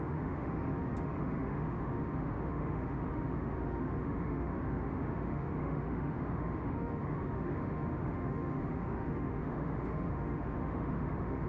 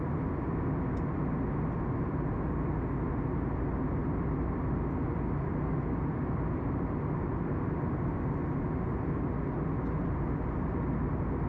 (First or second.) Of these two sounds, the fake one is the first